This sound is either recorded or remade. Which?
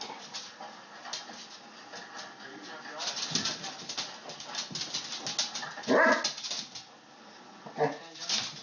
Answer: recorded